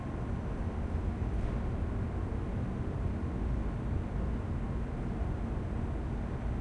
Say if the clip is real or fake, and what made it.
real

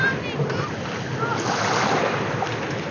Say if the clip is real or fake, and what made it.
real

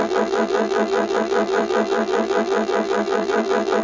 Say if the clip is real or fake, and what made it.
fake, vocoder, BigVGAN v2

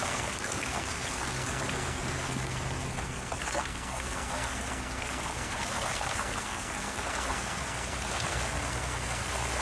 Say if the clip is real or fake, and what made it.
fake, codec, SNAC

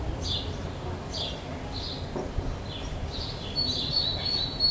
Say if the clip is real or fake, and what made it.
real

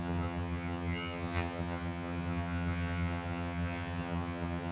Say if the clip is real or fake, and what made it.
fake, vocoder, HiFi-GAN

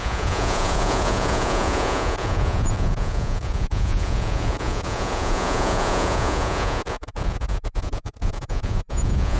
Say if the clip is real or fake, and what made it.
fake, vocoder, Vocos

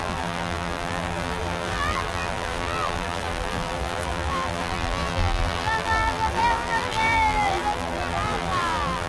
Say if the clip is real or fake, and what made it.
fake, vocoder, BigVGAN v2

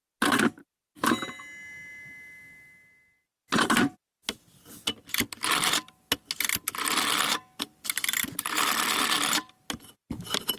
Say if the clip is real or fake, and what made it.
real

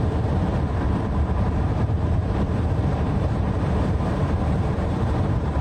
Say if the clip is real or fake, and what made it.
fake, vocoder, BigVGAN v2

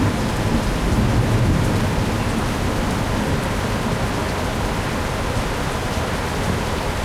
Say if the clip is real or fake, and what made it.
real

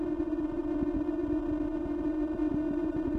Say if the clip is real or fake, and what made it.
real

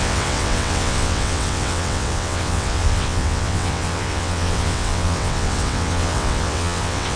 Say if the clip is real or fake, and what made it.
fake, vocoder, WaveNeXt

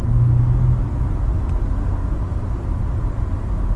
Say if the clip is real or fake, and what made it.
real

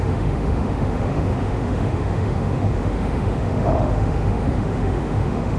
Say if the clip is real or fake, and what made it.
fake, autoencoder, DAC-VAE